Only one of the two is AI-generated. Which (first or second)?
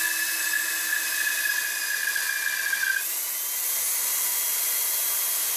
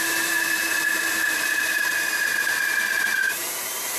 second